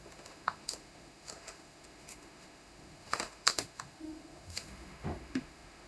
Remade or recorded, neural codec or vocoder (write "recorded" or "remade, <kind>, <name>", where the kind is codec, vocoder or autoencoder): remade, autoencoder, DAC-VAE